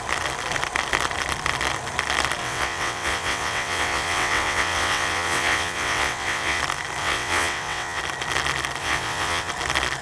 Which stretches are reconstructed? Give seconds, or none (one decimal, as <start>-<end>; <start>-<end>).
2.4-6.6; 7.0-8.0; 8.8-9.5